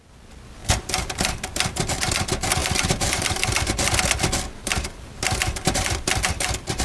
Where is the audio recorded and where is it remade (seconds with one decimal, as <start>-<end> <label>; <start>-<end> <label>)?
0.0-0.6 recorded; 0.6-1.8 remade; 1.8-2.6 recorded; 2.6-3.7 remade; 3.7-4.6 recorded; 4.6-6.8 remade